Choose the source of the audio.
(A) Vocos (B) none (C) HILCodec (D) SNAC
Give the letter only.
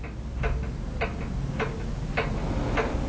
B